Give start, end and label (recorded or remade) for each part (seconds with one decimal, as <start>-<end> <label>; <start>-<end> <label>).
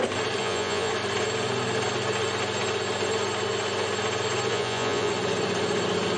0.0-0.4 recorded; 0.4-0.9 remade; 0.9-4.5 recorded; 4.5-5.1 remade; 5.1-6.2 recorded